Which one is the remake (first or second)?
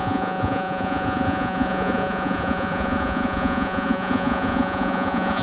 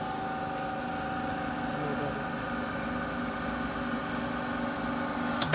first